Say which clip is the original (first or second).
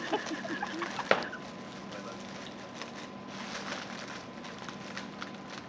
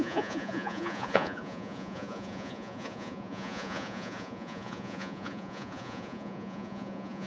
first